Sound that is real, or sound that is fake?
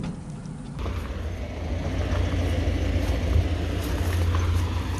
real